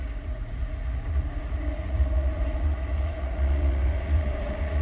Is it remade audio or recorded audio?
remade